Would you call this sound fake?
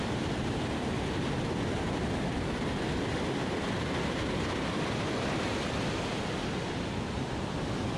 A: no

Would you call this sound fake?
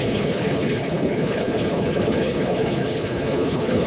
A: yes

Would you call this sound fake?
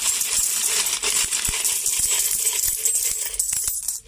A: no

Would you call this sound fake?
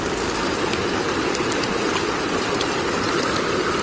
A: no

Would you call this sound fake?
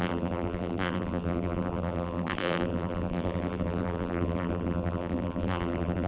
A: yes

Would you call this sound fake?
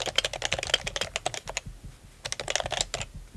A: no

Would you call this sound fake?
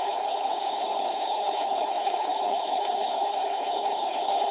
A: yes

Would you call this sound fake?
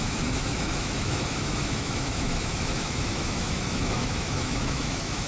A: yes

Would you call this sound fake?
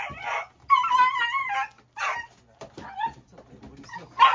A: no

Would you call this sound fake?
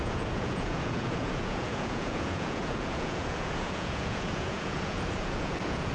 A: yes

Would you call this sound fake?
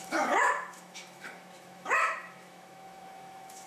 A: yes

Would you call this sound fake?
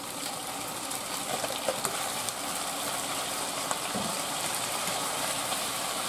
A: yes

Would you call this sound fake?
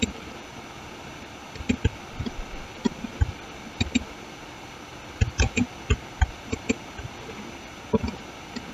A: no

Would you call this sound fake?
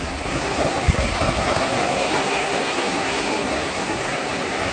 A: yes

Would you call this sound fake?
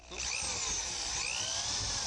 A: no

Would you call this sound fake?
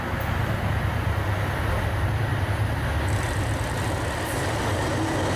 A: no